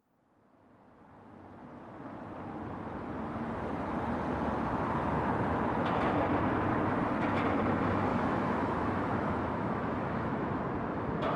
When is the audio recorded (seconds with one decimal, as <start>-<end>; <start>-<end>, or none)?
0.0-8.1; 10.6-11.4